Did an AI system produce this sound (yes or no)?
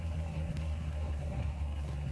yes